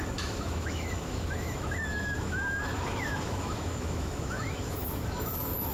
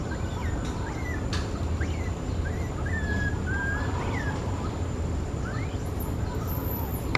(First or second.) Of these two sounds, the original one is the second